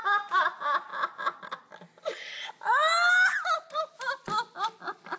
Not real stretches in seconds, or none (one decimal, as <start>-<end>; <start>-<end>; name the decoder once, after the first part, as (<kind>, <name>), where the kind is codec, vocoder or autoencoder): none